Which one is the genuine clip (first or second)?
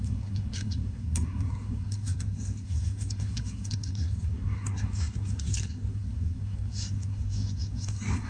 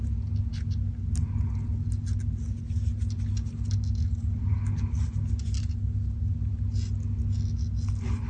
second